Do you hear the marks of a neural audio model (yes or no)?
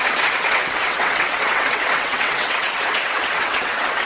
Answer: yes